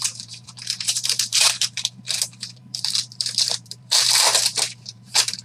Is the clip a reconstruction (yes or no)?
yes